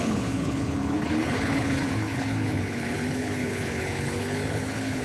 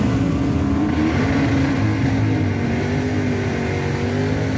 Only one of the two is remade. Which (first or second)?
first